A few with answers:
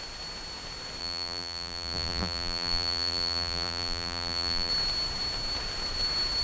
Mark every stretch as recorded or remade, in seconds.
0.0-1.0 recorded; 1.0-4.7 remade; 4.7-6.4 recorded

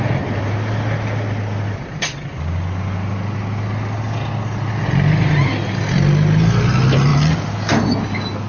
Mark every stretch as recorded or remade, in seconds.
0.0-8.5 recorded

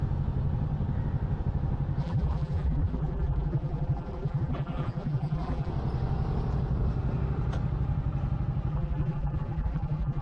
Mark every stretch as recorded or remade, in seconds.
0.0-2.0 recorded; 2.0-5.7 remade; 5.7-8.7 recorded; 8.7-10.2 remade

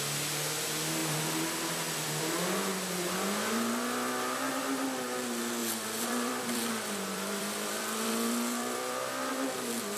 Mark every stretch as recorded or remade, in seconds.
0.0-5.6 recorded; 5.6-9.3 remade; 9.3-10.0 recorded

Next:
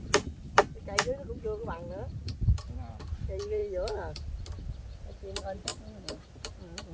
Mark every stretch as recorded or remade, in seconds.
0.0-6.9 recorded

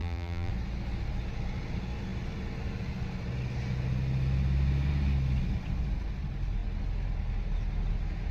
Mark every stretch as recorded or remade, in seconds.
0.0-0.5 remade; 0.5-8.3 recorded